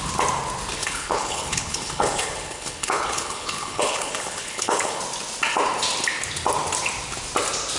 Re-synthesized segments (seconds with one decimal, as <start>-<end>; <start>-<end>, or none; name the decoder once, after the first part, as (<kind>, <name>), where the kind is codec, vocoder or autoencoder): 0.8-5.0 (codec, HILCodec)